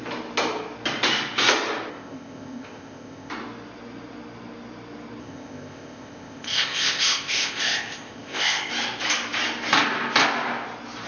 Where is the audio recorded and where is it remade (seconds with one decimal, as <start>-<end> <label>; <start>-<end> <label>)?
0.0-1.9 recorded; 1.9-3.3 remade; 3.3-5.2 recorded; 5.2-8.7 remade; 8.7-11.1 recorded